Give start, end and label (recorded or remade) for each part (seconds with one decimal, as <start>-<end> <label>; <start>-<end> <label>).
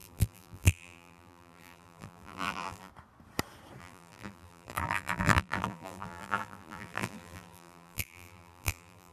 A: 0.0-2.9 remade; 2.9-3.8 recorded; 3.8-9.1 remade